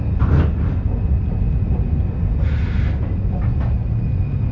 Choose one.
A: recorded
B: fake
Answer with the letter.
A